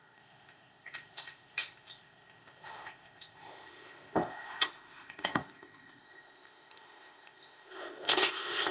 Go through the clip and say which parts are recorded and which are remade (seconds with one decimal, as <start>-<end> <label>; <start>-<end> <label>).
0.0-8.7 remade